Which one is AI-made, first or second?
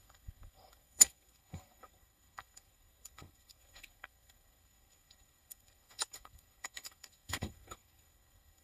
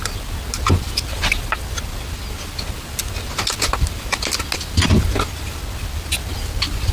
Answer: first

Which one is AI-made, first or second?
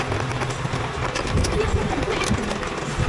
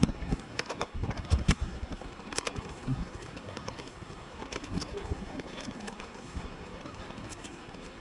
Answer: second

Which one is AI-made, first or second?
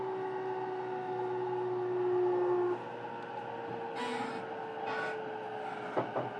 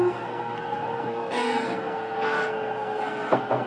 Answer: second